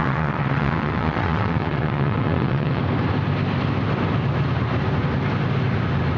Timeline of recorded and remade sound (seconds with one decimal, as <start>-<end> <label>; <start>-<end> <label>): 0.0-2.8 remade; 2.8-6.2 recorded